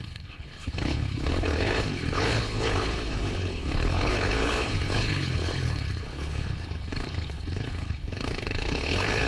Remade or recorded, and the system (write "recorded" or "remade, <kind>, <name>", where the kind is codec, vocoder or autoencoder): remade, codec, HILCodec